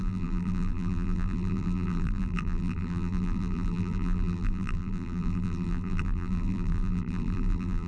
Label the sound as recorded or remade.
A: remade